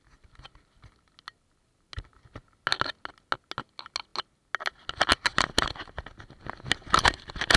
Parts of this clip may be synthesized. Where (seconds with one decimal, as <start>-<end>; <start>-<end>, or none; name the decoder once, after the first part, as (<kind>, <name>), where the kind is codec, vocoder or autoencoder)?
none